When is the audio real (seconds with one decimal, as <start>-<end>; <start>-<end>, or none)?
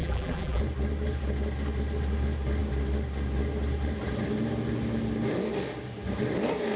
0.6-6.8